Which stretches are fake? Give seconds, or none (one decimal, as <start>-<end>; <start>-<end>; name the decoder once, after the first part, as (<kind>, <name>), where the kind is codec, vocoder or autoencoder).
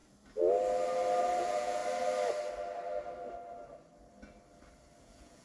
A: 1.4-1.8 (vocoder, Vocos); 5.0-5.4